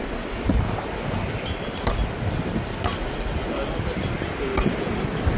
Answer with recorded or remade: recorded